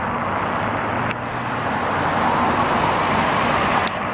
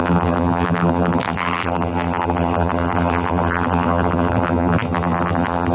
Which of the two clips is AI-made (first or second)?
second